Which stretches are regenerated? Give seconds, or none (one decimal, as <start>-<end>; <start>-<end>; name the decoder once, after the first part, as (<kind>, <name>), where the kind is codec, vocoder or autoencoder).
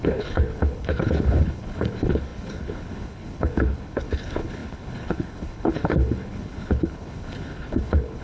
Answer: 0.0-8.2 (codec, HILCodec)